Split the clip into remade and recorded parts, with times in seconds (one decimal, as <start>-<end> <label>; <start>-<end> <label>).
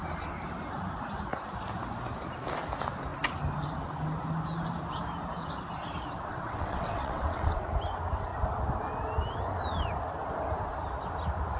0.0-6.3 recorded; 6.3-7.6 remade; 7.6-11.6 recorded